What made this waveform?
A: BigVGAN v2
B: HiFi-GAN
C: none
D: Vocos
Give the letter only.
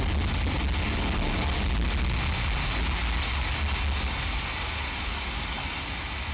C